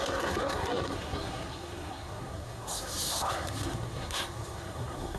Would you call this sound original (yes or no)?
no